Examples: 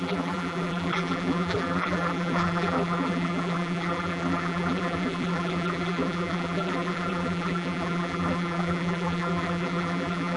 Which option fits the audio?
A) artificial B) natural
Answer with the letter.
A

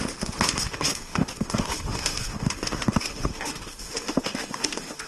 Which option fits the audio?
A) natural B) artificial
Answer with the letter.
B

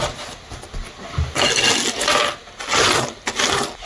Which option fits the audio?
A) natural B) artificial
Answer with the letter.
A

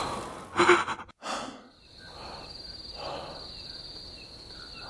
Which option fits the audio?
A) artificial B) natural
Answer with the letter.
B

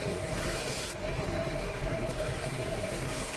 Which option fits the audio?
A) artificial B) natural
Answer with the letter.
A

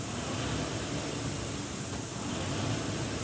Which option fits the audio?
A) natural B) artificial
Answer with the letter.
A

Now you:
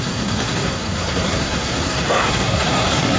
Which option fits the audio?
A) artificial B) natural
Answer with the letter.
A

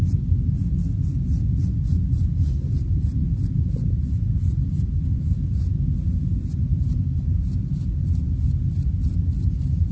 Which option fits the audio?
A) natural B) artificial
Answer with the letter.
A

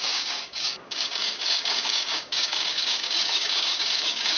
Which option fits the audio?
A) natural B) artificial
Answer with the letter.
B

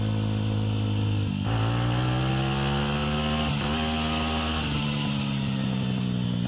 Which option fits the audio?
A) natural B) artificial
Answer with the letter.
A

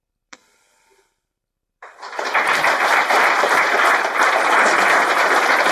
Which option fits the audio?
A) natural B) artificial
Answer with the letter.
B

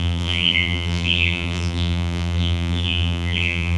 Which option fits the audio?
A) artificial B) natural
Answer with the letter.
A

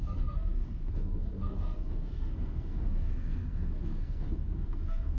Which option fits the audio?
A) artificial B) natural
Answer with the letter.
A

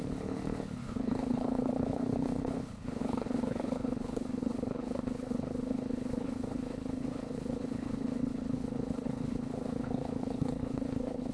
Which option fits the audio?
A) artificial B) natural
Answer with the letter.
A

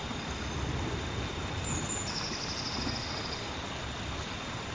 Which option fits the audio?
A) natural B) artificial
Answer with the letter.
A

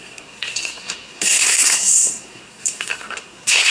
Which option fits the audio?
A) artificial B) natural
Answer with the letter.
A